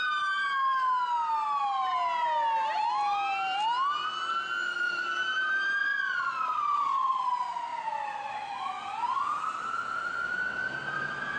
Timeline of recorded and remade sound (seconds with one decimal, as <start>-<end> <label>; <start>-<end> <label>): 0.0-5.8 recorded; 5.8-7.2 remade; 7.2-11.4 recorded